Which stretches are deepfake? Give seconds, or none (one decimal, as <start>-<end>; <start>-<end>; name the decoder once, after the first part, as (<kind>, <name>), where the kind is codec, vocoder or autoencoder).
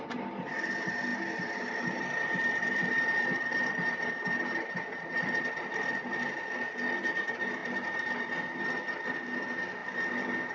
none